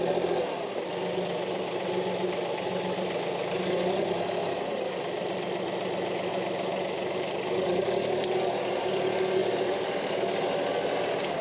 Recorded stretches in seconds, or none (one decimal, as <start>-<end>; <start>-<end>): 0.0-9.4; 10.1-11.4